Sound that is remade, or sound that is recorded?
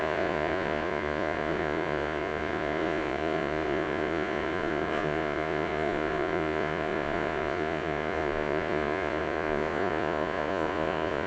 remade